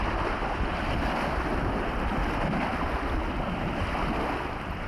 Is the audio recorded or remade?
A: recorded